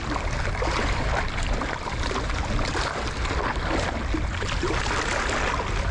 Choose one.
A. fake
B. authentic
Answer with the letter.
B